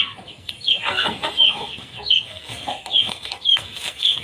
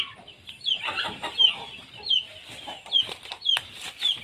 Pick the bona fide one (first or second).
second